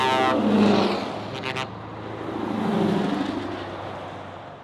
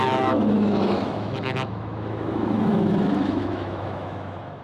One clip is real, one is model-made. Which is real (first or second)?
first